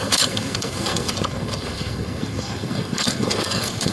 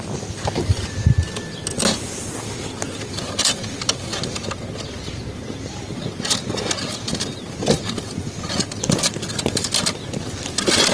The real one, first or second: second